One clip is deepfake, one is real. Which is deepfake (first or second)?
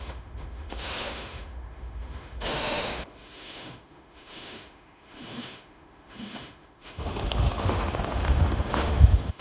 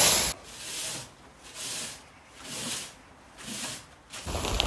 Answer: first